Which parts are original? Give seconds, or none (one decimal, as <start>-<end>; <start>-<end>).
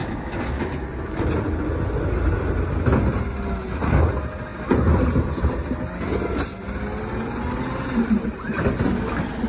0.6-9.5